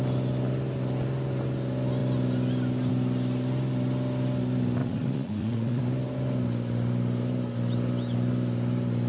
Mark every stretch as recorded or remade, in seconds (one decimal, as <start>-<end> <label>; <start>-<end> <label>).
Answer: 0.0-4.8 recorded; 4.8-5.8 remade; 5.8-9.1 recorded